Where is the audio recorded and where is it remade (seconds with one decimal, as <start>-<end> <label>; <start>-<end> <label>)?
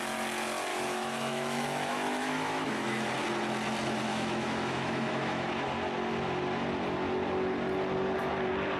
0.0-0.7 recorded; 0.7-3.1 remade; 3.1-4.1 recorded; 4.1-5.5 remade; 5.5-8.8 recorded